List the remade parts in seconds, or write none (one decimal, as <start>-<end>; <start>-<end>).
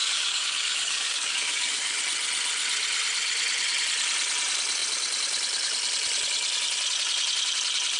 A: 0.0-2.0